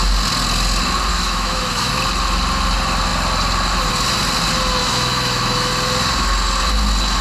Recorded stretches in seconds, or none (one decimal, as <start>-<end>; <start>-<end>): 0.0-1.1; 1.9-4.8; 5.7-7.2